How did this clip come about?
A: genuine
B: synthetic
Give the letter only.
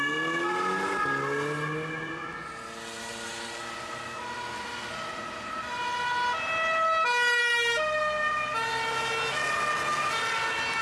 A